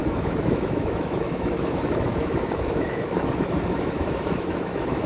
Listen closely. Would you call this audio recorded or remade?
remade